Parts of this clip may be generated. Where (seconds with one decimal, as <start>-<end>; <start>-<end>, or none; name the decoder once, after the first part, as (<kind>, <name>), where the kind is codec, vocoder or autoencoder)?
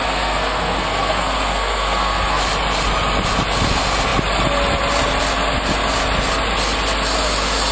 0.0-2.4 (codec, SNAC)